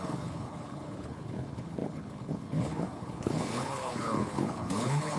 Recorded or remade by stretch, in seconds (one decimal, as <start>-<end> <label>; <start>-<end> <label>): 0.0-5.2 remade